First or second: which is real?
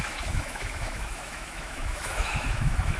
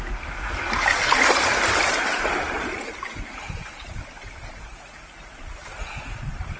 second